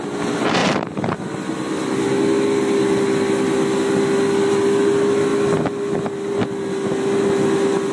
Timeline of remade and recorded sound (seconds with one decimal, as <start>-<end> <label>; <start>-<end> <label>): 0.0-7.9 recorded

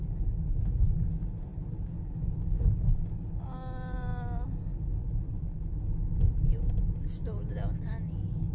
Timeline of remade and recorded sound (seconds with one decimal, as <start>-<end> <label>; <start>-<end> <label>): 0.0-8.5 recorded

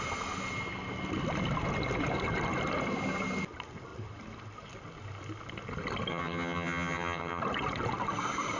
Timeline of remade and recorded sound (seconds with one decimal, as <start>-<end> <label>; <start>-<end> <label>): 0.0-6.1 recorded; 6.1-7.4 remade; 7.4-8.6 recorded

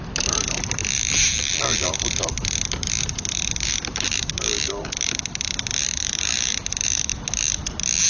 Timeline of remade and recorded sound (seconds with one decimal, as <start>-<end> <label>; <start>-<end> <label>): 0.0-7.1 remade; 7.1-8.1 recorded

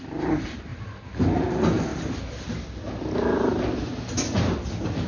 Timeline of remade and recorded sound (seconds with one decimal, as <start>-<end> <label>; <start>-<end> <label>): 0.0-5.1 recorded